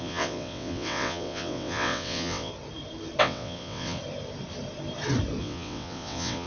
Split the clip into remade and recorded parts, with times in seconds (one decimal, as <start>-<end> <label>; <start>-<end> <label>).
0.0-2.5 remade; 2.5-3.2 recorded; 3.2-4.0 remade; 4.0-5.4 recorded; 5.4-6.5 remade